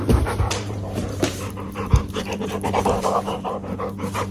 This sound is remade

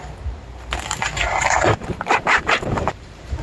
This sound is remade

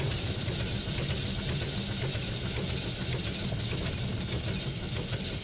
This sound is recorded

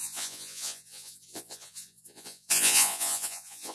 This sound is remade